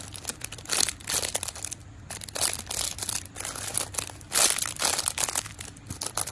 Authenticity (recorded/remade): recorded